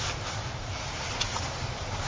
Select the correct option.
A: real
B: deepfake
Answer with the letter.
A